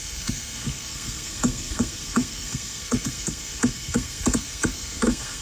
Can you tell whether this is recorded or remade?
remade